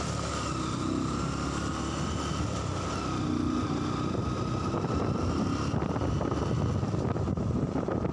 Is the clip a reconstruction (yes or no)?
no